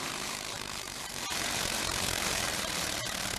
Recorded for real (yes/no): no